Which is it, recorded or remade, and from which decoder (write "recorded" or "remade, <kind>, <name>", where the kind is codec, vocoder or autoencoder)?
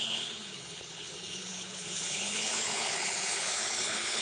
remade, codec, HILCodec